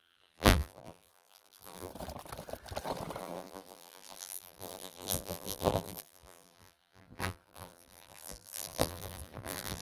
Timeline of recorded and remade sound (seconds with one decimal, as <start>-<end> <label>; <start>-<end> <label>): 0.0-1.9 remade; 1.9-3.2 recorded; 3.2-9.8 remade